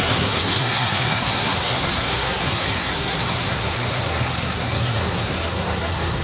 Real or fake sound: fake